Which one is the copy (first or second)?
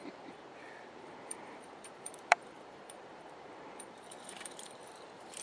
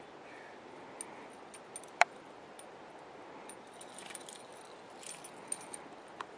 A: first